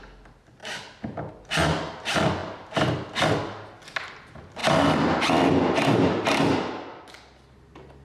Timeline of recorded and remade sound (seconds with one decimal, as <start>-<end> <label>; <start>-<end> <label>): 0.0-8.0 recorded